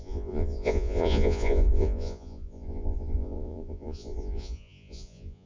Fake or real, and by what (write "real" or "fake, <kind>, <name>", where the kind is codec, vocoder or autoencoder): fake, vocoder, Vocos